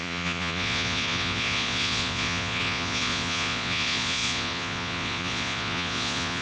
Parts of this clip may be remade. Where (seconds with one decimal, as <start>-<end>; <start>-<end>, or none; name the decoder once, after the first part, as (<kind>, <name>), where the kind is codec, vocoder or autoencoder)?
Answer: 0.0-6.4 (vocoder, Vocos)